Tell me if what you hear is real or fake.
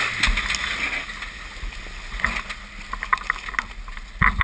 real